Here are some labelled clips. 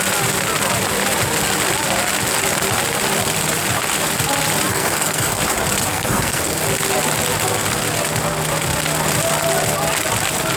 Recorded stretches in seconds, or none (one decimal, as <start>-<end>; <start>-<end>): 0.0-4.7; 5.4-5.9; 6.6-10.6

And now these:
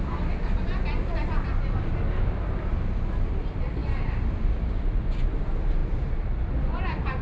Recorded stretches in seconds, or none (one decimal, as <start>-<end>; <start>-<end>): 0.0-7.2

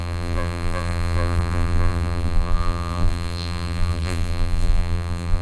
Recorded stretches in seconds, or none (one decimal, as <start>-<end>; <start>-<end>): none